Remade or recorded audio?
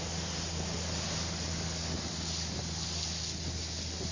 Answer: recorded